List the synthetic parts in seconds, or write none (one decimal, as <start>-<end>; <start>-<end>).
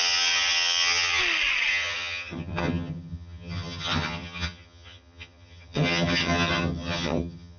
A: 0.0-1.2; 1.7-7.6